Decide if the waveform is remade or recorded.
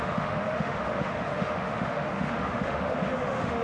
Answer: remade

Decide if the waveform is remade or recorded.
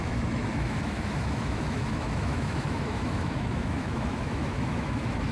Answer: remade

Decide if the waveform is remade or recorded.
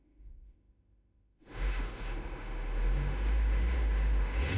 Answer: remade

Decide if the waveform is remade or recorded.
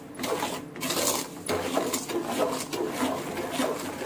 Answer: recorded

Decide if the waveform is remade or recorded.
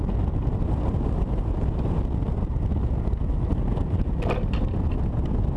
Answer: recorded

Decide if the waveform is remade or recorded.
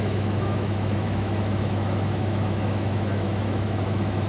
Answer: remade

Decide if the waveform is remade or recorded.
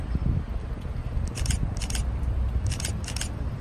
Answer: recorded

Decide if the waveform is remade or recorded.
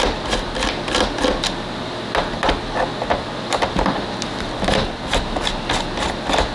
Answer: recorded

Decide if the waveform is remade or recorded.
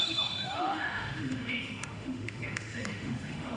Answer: remade